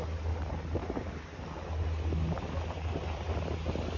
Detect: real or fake real